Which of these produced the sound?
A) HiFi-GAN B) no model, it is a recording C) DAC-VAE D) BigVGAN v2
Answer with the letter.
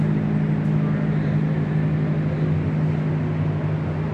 B